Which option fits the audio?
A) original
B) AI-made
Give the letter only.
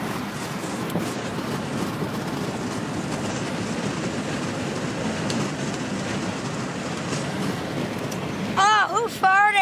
A